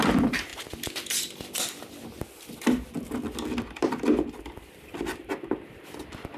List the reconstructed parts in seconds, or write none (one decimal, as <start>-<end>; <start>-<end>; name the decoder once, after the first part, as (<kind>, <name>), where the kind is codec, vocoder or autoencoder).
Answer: 0.0-0.5 (vocoder, BigVGAN v2); 4.3-6.4